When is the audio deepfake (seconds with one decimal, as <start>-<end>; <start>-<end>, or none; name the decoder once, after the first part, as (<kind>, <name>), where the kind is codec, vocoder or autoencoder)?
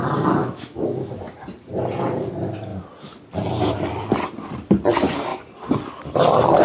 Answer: 0.4-1.2 (autoencoder, DAC-VAE)